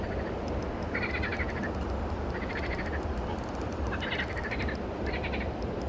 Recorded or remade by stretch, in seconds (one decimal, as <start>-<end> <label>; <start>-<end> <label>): 0.0-5.9 recorded